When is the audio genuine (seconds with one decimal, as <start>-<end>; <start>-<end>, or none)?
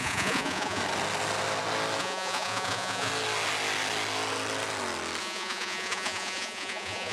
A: 0.8-2.0; 3.1-5.2